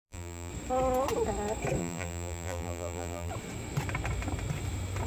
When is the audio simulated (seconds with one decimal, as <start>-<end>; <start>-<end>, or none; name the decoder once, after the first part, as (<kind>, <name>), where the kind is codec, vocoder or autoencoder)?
0.0-0.5 (vocoder, BigVGAN v2); 1.8-3.3

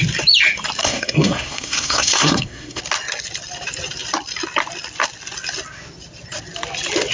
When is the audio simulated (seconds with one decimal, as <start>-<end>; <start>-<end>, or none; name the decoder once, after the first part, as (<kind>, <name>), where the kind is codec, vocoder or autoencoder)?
0.8-2.8 (codec, SNAC)